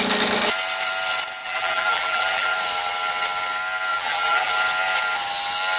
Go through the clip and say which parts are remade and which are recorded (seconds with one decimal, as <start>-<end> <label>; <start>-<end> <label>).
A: 0.0-1.4 recorded; 1.4-2.5 remade; 2.5-3.9 recorded; 3.9-4.5 remade; 4.5-5.8 recorded